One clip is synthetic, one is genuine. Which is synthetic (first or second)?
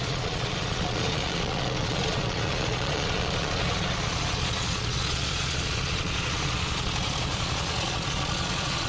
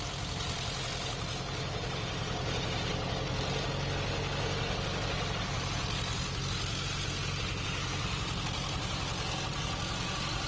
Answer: first